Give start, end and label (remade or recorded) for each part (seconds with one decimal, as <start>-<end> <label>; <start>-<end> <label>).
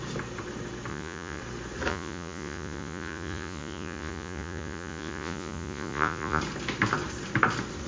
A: 0.0-0.9 recorded; 0.9-1.4 remade; 1.4-1.9 recorded; 1.9-6.4 remade; 6.4-7.9 recorded